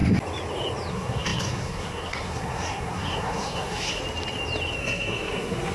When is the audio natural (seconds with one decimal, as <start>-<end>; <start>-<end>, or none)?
0.0-0.9; 4.0-4.8